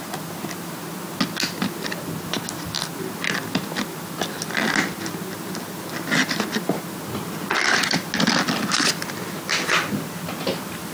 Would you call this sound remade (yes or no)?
no